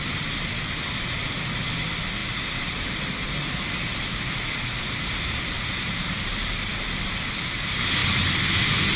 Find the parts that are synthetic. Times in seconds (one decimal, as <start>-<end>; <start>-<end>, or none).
none